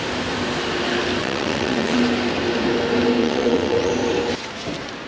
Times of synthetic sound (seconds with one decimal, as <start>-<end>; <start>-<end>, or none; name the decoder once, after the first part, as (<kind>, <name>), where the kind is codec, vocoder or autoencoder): 1.2-2.0 (vocoder, WaveNeXt); 3.2-3.9